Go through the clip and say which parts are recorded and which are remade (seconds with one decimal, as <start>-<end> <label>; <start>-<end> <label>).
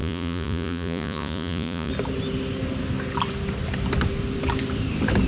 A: 0.0-1.9 remade; 1.9-5.3 recorded